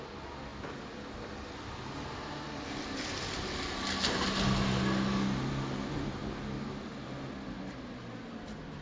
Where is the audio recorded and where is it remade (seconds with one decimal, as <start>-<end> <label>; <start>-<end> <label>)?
0.0-8.8 recorded